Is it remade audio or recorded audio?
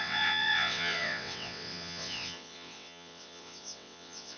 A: remade